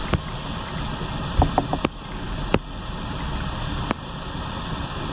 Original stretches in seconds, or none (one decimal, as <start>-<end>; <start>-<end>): 0.0-5.1